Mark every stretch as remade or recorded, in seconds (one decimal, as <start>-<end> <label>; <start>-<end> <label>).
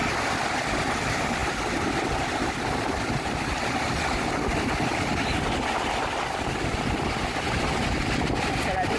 0.0-9.0 recorded